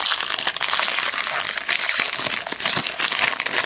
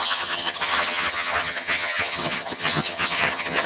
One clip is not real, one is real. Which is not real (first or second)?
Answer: second